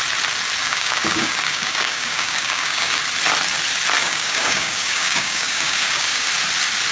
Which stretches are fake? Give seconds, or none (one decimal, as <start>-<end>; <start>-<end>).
0.6-3.0; 4.0-6.3